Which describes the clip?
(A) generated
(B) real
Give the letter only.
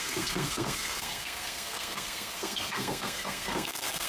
A